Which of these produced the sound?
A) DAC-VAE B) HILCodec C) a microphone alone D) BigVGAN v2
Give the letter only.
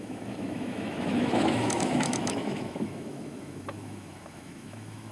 A